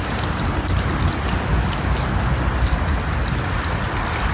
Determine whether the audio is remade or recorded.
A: recorded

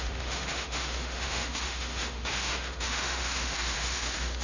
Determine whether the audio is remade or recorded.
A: remade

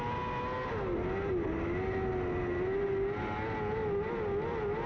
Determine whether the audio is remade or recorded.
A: recorded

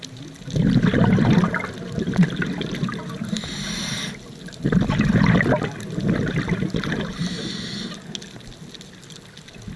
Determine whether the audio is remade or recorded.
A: recorded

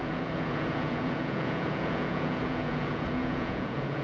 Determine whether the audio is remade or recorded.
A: remade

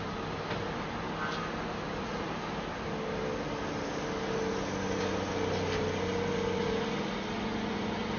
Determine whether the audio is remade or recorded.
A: recorded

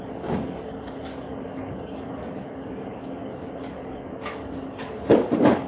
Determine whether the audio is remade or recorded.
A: remade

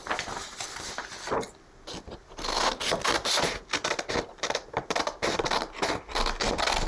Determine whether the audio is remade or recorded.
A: recorded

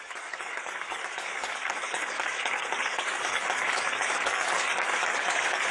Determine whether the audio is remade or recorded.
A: remade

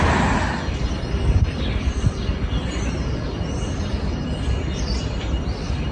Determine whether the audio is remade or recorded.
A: recorded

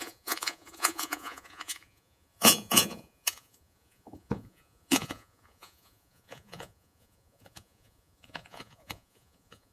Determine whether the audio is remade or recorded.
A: remade